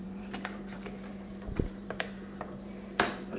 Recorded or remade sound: remade